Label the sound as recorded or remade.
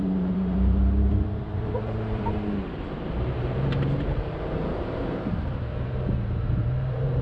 remade